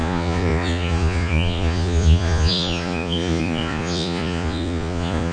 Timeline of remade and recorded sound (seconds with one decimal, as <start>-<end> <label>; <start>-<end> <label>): 0.0-5.3 remade